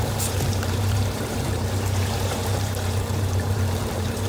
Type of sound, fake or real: fake